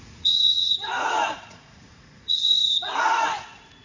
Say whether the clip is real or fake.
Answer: fake